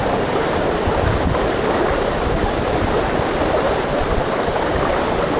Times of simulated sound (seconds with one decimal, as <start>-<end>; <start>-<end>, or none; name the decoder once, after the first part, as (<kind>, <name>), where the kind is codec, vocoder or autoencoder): 3.9-4.6 (vocoder, BigVGAN v2)